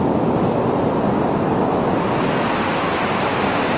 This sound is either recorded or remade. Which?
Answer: recorded